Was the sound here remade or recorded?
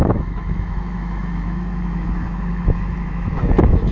remade